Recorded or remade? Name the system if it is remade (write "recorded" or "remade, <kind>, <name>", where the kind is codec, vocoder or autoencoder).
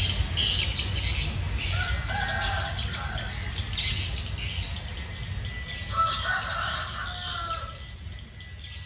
recorded